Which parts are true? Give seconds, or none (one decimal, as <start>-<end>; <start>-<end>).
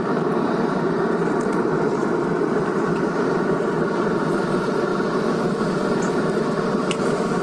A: 2.0-2.6; 4.9-5.9